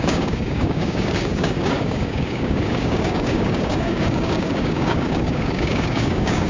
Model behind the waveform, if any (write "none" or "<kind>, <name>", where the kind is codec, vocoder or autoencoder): codec, DAC